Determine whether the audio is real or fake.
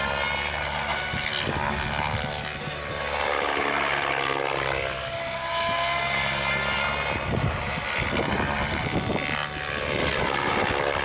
real